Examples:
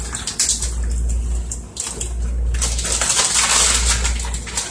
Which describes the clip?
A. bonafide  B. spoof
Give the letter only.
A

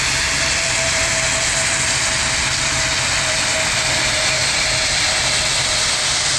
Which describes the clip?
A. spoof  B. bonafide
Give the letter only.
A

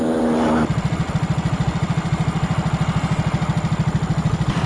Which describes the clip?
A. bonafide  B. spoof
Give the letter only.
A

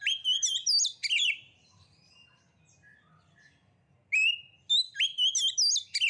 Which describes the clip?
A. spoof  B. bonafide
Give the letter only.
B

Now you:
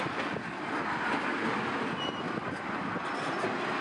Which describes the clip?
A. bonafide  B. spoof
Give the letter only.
A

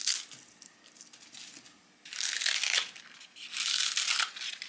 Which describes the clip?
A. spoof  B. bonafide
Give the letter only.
B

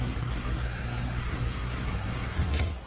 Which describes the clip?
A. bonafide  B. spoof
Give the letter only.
B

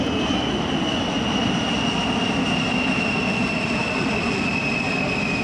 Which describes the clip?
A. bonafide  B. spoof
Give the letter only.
A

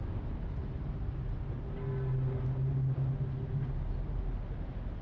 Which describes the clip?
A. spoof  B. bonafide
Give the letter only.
B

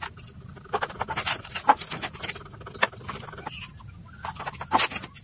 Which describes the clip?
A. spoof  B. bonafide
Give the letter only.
B